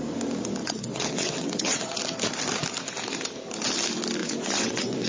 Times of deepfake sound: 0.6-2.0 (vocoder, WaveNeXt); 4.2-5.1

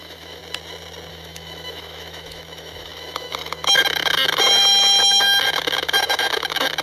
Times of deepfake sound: 0.0-0.4 (autoencoder, DAC-VAE); 1.1-6.8

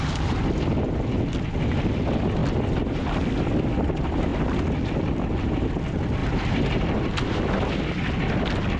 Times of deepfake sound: 2.4-3.2 (vocoder, BigVGAN v2); 4.3-5.7; 6.2-7.2

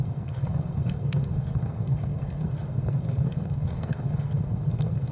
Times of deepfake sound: 0.0-5.1 (codec, SNAC)

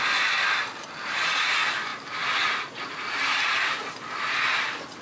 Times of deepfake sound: none

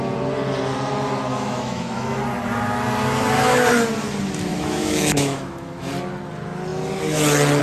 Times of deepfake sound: 1.3-2.2 (autoencoder, DAC-VAE); 4.5-5.9

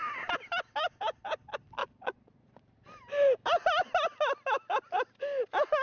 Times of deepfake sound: 1.8-2.6 (vocoder, Vocos)